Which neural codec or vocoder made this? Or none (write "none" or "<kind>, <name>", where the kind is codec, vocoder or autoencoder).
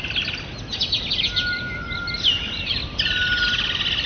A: none